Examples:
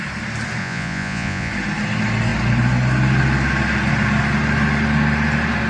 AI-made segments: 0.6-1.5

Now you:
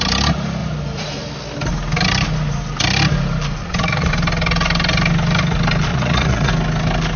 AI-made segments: 3.6-4.1; 5.9-6.5

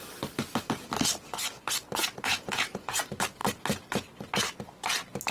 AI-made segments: 2.0-3.0

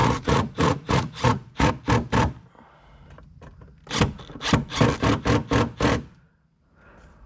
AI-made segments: 0.0-1.7

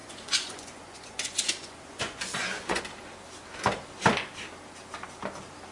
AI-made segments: 0.0-2.8